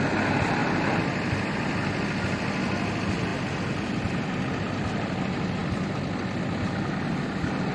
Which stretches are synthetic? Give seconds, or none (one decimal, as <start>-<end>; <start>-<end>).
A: none

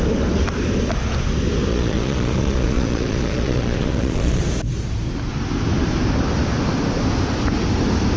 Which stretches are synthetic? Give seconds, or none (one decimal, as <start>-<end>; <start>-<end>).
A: 1.7-4.4

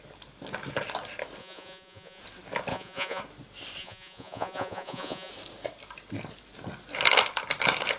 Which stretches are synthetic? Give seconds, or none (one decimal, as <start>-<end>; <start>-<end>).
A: 1.4-2.2; 2.7-3.2; 3.8-5.3

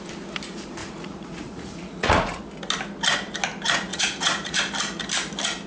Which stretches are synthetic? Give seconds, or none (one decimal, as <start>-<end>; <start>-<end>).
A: 0.8-2.4; 3.9-4.6